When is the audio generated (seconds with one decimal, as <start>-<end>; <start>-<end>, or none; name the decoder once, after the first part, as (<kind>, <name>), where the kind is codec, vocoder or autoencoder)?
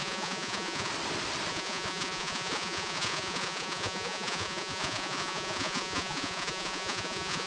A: 0.0-0.9 (vocoder, Vocos); 1.5-7.5